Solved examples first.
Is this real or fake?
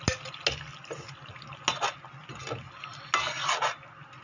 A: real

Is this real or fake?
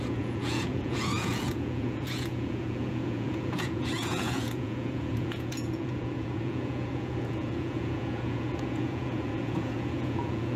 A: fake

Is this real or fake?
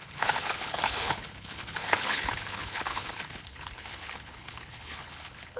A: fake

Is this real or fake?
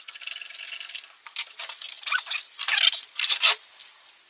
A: real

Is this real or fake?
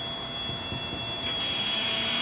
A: real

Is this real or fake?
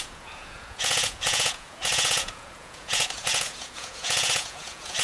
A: fake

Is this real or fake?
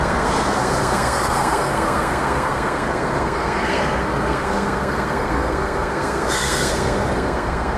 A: fake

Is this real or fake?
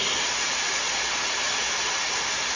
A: real